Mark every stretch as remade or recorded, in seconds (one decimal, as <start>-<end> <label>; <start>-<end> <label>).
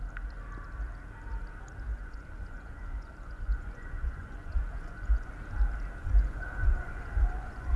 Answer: 0.0-1.9 recorded; 1.9-5.3 remade; 5.3-6.0 recorded; 6.0-7.8 remade